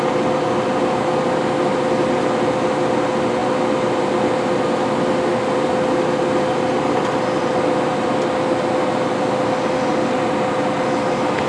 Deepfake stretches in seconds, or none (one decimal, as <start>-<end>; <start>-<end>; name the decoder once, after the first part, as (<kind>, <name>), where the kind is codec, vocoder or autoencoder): none